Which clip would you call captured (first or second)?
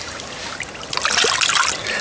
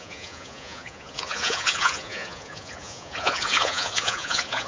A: first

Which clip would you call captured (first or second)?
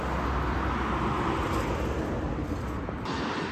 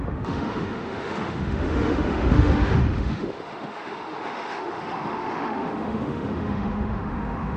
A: first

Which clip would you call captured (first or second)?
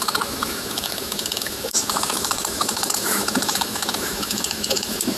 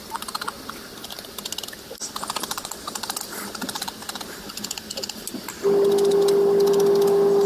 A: second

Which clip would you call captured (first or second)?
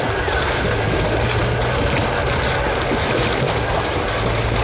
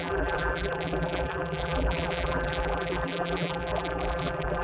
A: first